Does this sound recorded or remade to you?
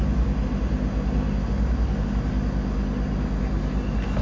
recorded